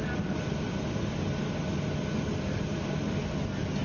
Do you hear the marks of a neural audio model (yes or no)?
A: no